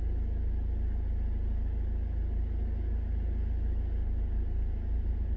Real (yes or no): yes